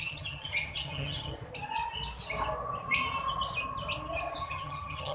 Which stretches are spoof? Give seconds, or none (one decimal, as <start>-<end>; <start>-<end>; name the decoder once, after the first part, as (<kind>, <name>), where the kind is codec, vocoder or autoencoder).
0.0-1.3 (vocoder, HiFi-GAN); 4.4-5.1